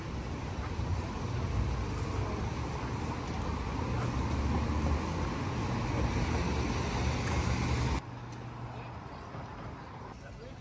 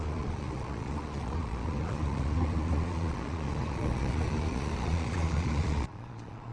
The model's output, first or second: second